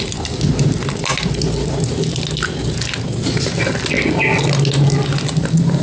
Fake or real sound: real